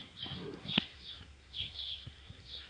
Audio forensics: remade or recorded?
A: remade